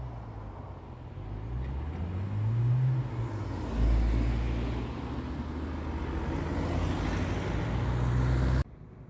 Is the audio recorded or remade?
recorded